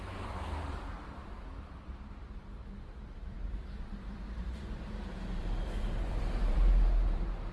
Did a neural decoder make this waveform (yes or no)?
yes